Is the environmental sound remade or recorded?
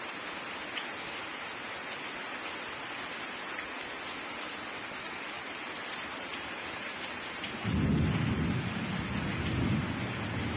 recorded